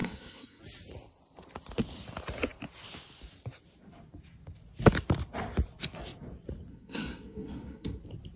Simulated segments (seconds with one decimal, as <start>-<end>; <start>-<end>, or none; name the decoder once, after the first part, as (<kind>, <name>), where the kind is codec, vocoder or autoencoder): 0.0-0.6 (codec, SNAC); 6.7-8.0